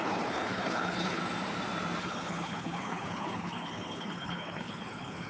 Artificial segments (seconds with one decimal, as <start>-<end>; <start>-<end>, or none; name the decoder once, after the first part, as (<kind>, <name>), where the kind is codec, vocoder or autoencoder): 0.0-1.2 (codec, HILCodec); 2.0-5.3